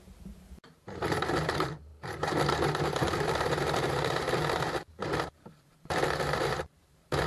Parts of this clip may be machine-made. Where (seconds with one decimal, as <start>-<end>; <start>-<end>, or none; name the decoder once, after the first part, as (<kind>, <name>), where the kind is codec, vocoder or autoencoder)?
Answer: 0.0-7.3 (vocoder, BigVGAN v2)